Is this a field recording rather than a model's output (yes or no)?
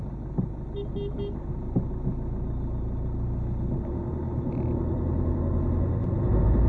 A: yes